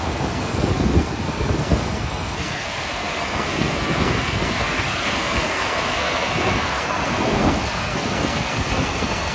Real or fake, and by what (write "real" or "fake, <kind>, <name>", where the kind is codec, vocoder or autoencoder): fake, codec, SNAC